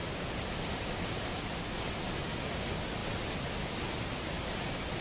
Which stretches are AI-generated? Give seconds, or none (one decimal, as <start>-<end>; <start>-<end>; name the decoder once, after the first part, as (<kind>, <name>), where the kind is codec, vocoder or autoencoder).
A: none